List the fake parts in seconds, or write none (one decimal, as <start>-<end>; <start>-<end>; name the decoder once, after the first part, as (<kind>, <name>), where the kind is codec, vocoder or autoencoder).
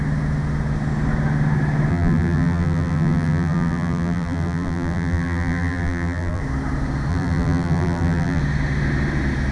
1.9-6.4 (vocoder, BigVGAN v2); 7.1-8.4